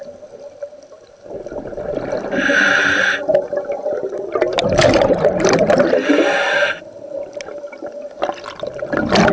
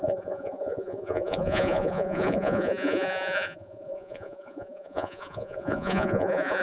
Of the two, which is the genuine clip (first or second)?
first